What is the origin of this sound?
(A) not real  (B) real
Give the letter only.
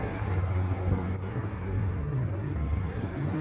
A